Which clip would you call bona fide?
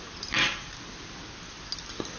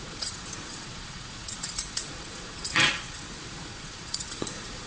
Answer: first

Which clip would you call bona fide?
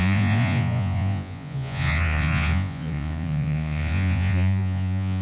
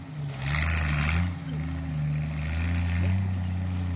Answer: second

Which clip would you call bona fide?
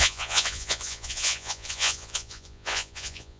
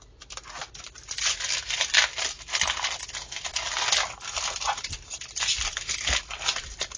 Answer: second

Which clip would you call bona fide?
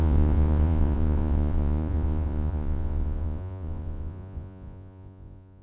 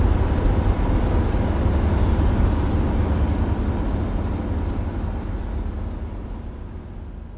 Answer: second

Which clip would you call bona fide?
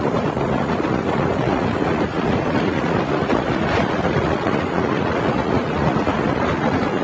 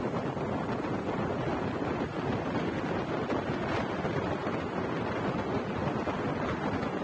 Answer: second